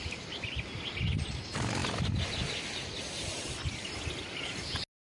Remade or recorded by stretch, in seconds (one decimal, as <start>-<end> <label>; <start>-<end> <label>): 0.0-5.1 recorded